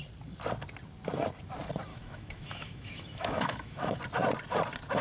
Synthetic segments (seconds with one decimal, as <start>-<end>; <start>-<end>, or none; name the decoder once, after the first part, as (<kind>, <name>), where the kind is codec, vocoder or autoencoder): 1.9-4.0 (autoencoder, DAC-VAE)